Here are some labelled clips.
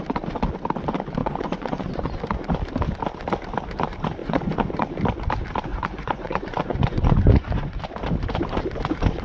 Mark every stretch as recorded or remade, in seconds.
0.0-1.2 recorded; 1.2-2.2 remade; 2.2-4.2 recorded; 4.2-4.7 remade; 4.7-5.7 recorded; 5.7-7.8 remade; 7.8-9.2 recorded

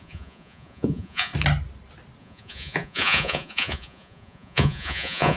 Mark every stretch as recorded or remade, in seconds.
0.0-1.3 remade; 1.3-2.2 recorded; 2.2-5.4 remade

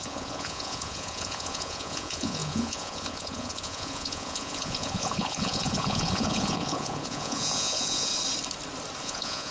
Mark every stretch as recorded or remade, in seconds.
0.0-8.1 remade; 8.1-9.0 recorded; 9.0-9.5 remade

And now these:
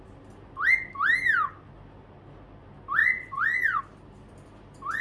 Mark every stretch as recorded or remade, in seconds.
0.0-3.0 recorded; 3.0-3.8 remade; 3.8-5.0 recorded

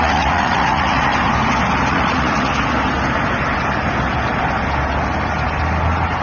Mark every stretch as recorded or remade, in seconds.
0.0-1.1 remade; 1.1-1.9 recorded; 1.9-2.5 remade; 2.5-6.2 recorded

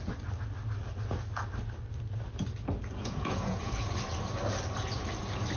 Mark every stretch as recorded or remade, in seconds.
0.0-3.0 recorded; 3.0-3.7 remade; 3.7-5.6 recorded

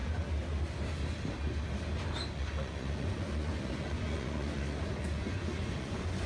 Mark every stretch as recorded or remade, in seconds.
0.0-2.3 recorded; 2.3-6.3 remade

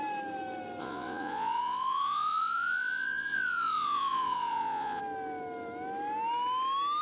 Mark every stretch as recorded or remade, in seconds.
0.0-0.8 recorded; 0.8-5.0 remade; 5.0-7.0 recorded